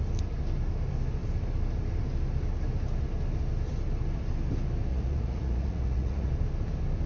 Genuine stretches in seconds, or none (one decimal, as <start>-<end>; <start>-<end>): 0.0-4.9; 6.3-7.1